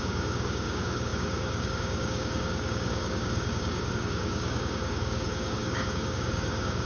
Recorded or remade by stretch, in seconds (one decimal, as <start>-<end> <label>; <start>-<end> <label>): 0.0-6.9 remade